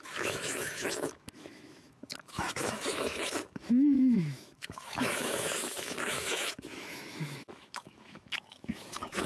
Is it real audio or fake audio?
fake